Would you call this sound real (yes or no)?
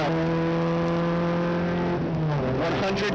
yes